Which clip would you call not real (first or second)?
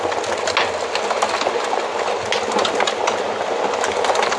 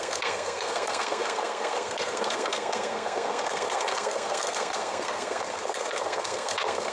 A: second